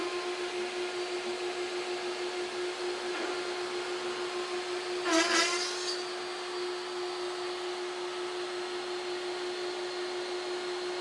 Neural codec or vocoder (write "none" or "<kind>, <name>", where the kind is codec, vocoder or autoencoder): none